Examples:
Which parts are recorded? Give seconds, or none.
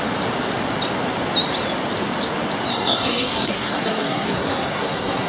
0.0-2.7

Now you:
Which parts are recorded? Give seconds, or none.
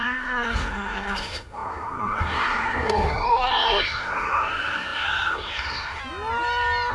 6.0-6.9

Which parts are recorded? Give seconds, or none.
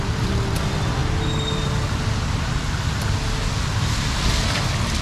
0.0-5.0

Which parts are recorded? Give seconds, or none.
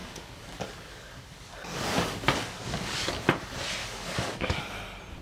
3.1-3.8; 4.6-5.2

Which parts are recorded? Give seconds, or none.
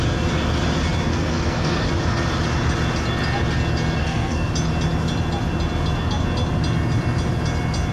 0.0-1.1; 1.8-4.0; 4.5-7.9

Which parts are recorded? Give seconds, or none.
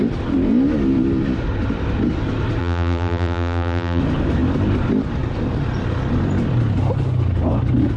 0.0-2.6; 4.0-8.0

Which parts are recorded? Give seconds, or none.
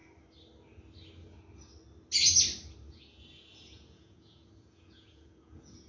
0.0-2.9